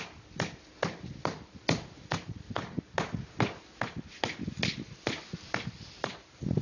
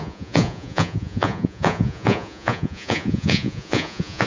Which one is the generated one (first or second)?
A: second